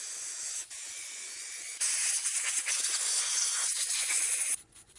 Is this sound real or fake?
fake